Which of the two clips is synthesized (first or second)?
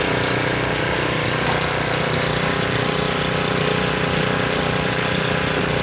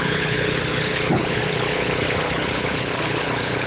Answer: second